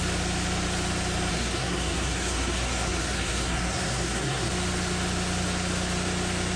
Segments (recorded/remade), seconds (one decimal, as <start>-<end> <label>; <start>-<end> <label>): 0.0-1.3 recorded; 1.3-4.5 remade; 4.5-6.6 recorded